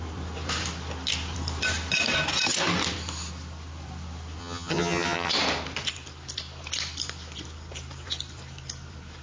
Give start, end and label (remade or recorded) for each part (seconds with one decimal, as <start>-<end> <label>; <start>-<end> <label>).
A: 0.0-4.4 recorded; 4.4-5.3 remade; 5.3-9.2 recorded